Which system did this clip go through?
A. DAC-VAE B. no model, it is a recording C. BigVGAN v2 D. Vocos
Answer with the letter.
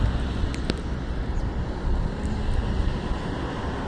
B